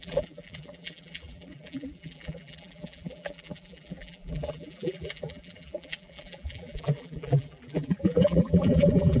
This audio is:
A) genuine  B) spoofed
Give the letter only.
B